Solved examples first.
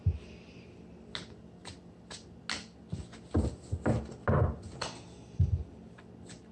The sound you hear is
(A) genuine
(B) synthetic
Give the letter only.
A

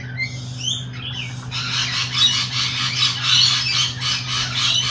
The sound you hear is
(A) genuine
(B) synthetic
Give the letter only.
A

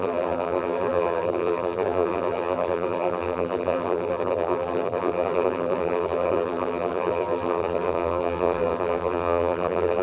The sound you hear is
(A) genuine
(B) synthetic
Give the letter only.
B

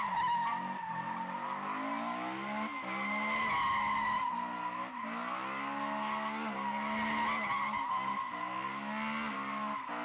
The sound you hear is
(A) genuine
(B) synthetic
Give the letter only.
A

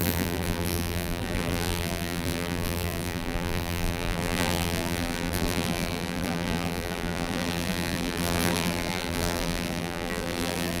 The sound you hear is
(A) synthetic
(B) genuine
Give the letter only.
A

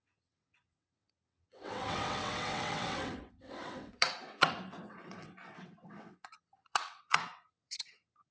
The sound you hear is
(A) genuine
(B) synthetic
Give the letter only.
B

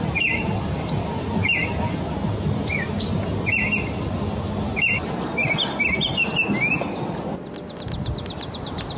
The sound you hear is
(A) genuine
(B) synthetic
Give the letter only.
A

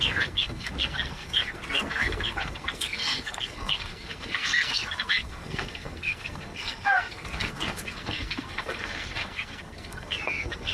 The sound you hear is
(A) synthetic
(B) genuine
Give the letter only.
A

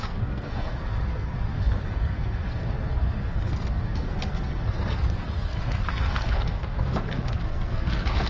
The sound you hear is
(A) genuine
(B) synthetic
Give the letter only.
B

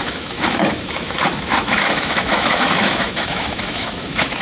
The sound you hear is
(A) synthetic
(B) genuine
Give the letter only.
A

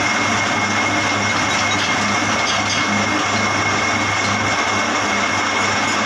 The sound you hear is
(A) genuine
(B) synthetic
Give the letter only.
A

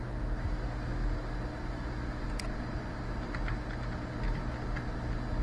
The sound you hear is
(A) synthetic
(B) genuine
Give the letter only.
B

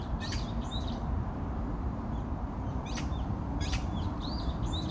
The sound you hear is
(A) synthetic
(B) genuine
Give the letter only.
A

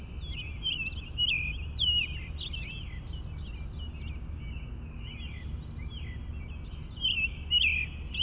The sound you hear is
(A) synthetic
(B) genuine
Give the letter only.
B